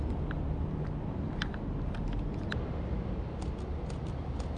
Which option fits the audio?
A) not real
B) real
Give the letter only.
B